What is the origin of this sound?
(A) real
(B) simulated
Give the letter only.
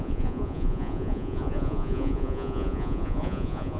B